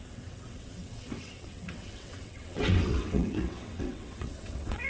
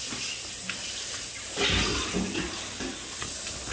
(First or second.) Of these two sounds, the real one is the second